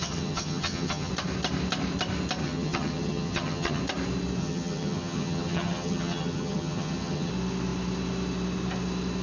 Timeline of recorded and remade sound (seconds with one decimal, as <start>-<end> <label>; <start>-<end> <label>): 0.0-1.1 remade; 1.1-2.4 recorded; 2.4-3.8 remade; 3.8-4.4 recorded; 4.4-7.3 remade; 7.3-9.2 recorded